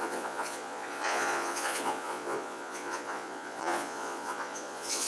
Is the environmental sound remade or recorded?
remade